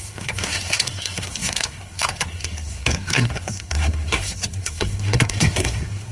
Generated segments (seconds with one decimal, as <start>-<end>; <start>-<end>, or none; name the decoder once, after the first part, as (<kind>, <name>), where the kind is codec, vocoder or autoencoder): 0.0-6.1 (codec, SNAC)